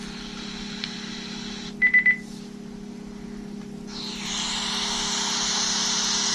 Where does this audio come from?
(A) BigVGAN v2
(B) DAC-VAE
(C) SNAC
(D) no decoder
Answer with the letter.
D